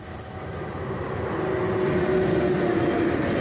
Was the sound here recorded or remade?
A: recorded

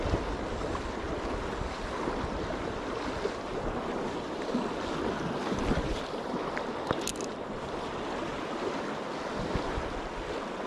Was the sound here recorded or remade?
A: recorded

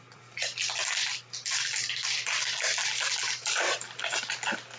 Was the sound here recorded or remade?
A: recorded